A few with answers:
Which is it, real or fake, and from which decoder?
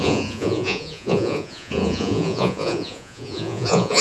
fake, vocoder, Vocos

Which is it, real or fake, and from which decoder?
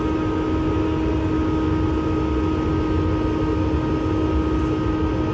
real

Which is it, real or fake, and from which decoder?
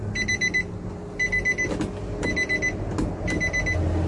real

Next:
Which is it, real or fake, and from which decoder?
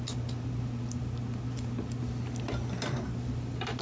real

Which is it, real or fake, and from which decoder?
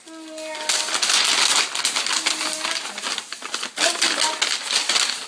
real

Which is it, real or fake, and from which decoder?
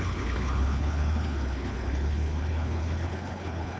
fake, codec, HILCodec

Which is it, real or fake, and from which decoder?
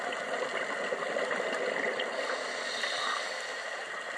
real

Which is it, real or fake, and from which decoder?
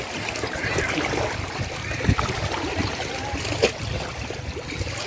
real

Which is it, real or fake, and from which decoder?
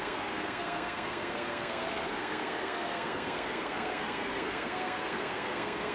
fake, codec, SNAC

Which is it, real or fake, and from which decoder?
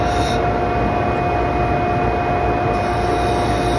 real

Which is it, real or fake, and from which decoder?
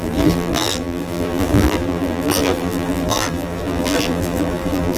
fake, vocoder, BigVGAN v2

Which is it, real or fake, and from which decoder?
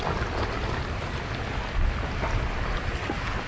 real